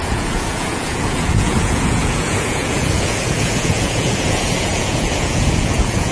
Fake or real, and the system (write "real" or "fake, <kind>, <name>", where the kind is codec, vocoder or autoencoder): fake, vocoder, Vocos